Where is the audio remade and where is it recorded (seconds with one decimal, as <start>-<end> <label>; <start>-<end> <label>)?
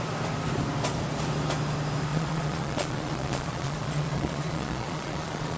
0.0-2.1 recorded; 2.1-5.6 remade